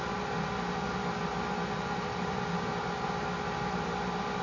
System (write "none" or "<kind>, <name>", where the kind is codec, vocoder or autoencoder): none